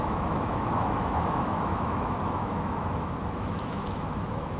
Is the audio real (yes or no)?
no